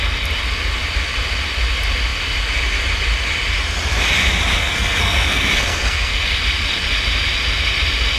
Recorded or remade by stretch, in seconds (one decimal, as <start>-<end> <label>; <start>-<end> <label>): 0.0-4.6 recorded; 4.6-6.4 remade; 6.4-8.2 recorded